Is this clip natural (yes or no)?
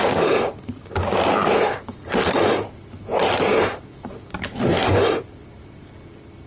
yes